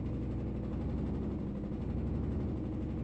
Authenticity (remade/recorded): recorded